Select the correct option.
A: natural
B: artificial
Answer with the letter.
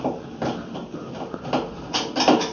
A